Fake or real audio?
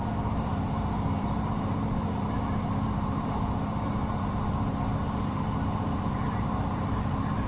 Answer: fake